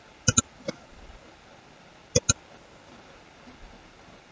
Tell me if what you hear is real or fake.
real